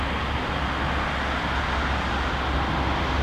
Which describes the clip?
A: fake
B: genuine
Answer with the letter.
B